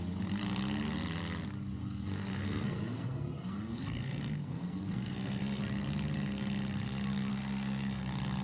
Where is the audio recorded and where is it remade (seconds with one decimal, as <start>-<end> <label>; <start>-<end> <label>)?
0.0-1.8 recorded; 1.8-5.6 remade; 5.6-7.3 recorded; 7.3-8.0 remade; 8.0-8.4 recorded